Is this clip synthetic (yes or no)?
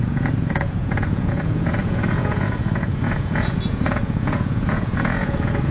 yes